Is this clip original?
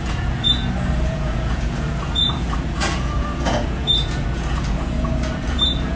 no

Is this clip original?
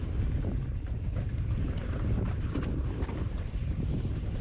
no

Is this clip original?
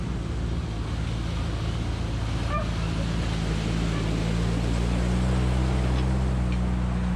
yes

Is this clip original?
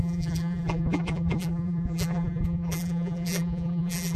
no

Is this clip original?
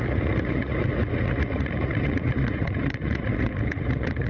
no